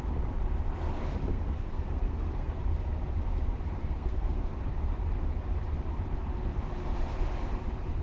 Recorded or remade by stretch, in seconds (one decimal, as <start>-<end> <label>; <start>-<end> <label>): 0.0-1.3 recorded; 1.3-2.6 remade; 2.6-3.8 recorded; 3.8-4.5 remade; 4.5-8.0 recorded